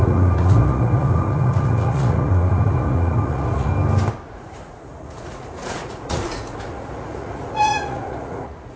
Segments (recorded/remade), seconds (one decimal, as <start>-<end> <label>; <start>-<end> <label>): 0.0-3.7 remade; 3.7-4.3 recorded; 4.3-8.8 remade